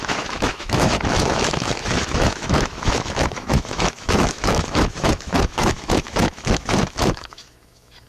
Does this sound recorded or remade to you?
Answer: remade